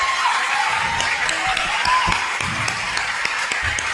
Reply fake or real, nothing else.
real